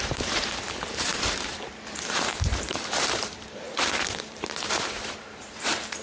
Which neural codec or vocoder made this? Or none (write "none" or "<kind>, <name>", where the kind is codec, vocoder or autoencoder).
vocoder, BigVGAN v2